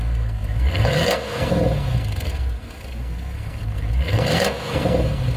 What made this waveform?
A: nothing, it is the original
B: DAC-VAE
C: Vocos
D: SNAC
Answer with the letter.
D